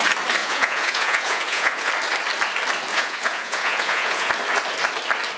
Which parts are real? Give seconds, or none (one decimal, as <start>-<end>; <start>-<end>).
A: 0.0-0.4; 1.9-2.9; 4.3-5.4